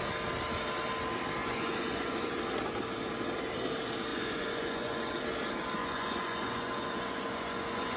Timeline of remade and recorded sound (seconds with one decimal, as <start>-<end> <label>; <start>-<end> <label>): 0.0-1.4 recorded; 1.4-2.4 remade; 2.4-4.1 recorded; 4.1-5.2 remade; 5.2-5.8 recorded; 5.8-8.0 remade